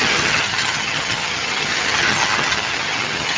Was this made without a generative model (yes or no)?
no